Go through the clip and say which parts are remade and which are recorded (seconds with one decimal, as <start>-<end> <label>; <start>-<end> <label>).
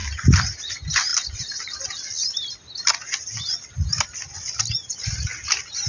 0.0-5.9 recorded